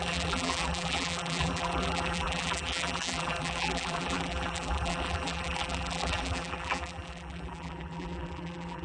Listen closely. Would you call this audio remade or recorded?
remade